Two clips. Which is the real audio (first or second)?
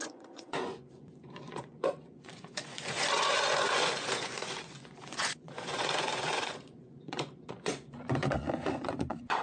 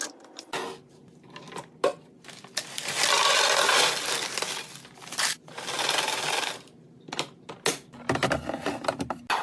second